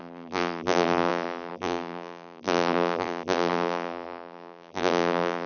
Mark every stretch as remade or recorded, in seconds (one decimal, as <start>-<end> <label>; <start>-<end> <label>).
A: 0.0-5.5 remade